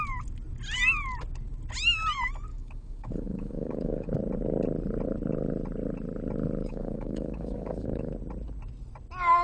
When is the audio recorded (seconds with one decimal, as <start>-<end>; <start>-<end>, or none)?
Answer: 0.0-2.5; 4.1-6.6; 8.1-9.4